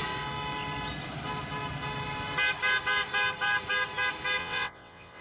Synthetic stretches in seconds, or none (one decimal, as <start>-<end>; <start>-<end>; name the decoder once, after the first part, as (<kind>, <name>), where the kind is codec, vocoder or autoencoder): 4.4-5.2 (vocoder, WaveNeXt)